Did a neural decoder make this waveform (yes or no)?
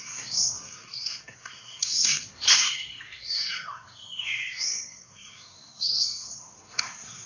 yes